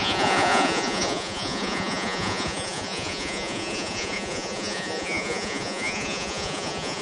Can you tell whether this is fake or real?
fake